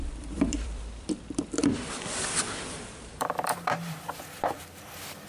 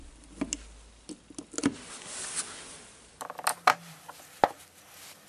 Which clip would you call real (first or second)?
second